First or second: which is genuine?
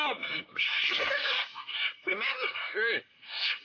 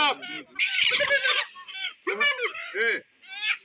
second